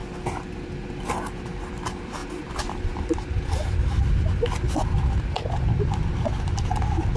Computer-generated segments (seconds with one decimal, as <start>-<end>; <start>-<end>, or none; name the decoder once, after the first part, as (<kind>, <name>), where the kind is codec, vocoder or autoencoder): none